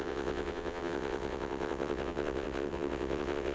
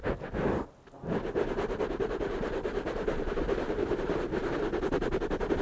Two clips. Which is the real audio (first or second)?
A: second